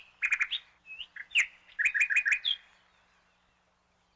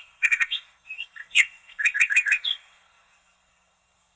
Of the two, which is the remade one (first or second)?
second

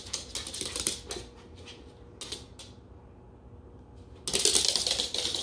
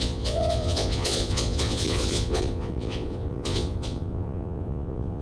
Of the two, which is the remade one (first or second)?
second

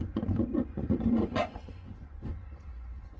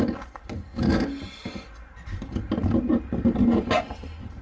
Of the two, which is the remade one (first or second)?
first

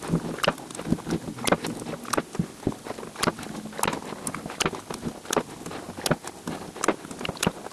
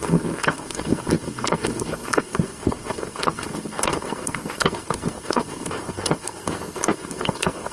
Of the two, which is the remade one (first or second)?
second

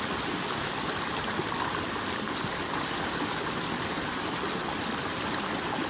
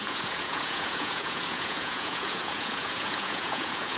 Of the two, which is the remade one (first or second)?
second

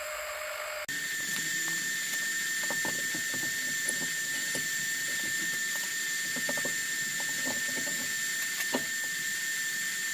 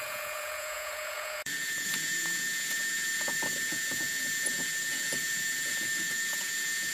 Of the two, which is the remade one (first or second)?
second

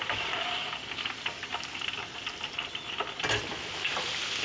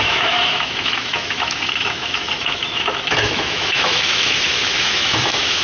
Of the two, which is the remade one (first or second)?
second